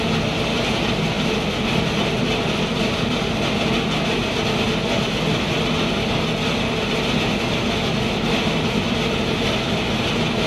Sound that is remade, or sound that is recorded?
recorded